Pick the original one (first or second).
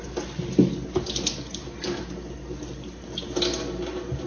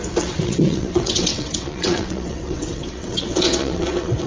first